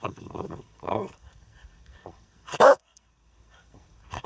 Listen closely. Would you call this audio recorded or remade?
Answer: remade